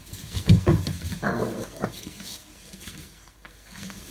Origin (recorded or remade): remade